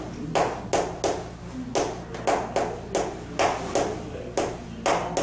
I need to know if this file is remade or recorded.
recorded